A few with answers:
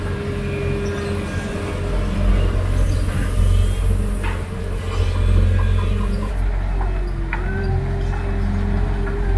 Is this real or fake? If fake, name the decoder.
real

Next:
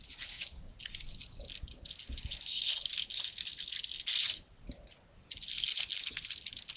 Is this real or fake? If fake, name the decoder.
real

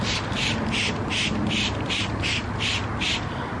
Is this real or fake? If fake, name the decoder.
real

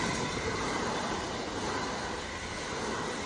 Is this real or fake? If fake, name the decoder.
real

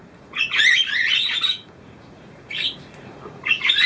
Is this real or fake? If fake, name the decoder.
fake, vocoder, Vocos